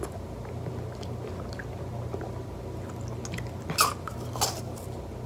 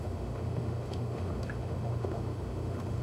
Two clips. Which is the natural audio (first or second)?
first